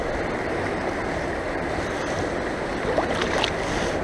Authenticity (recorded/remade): recorded